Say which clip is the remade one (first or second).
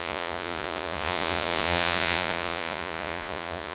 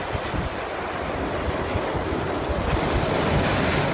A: first